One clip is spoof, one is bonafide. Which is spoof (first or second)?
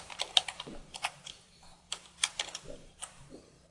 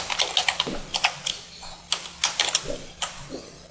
first